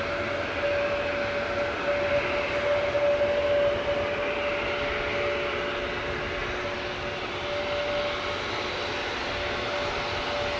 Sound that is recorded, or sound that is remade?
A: recorded